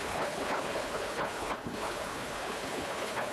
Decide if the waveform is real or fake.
fake